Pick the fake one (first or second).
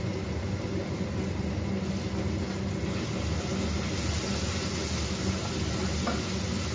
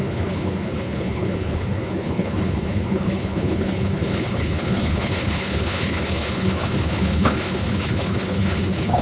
second